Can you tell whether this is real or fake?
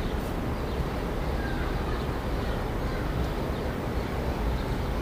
real